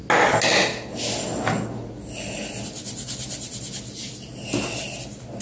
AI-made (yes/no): no